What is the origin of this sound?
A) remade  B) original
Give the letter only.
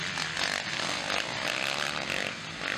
B